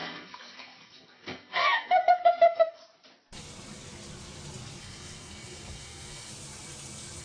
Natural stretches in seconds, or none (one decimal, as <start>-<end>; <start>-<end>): 2.8-4.8; 6.3-7.2